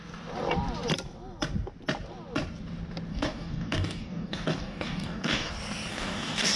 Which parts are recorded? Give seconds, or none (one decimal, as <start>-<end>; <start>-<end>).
0.0-3.1; 5.5-5.9